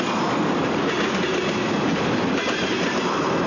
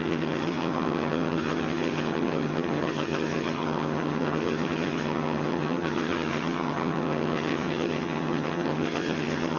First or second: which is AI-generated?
second